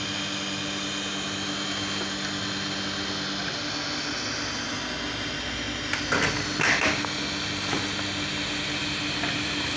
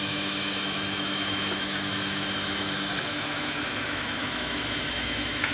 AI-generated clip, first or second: second